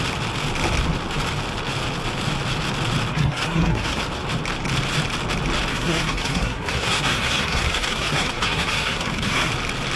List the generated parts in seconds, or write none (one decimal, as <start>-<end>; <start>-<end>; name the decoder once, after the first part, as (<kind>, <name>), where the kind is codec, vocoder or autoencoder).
3.1-4.0 (codec, SNAC); 5.7-9.5